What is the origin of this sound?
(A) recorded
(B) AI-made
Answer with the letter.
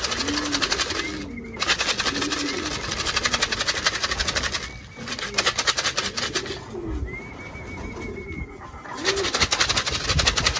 A